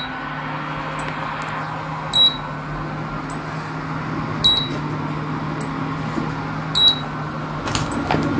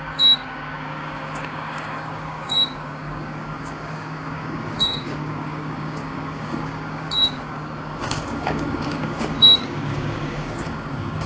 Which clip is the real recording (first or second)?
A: first